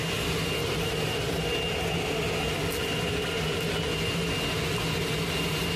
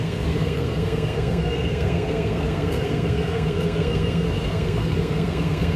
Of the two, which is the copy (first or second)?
second